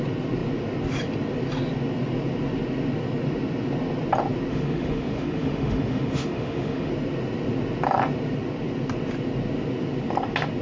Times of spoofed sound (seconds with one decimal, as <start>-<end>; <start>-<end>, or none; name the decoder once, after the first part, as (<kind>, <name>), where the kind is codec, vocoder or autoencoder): 4.5-6.9 (autoencoder, DAC-VAE)